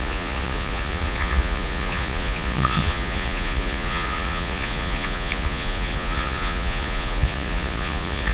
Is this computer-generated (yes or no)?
yes